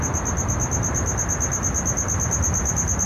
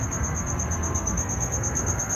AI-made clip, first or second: second